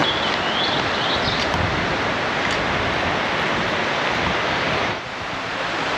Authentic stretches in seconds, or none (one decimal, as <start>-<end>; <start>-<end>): 0.0-6.0